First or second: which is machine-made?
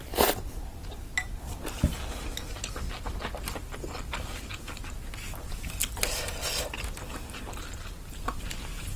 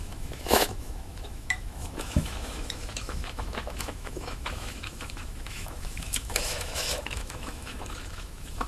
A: second